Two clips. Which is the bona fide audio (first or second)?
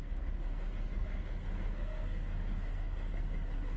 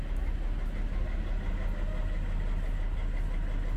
second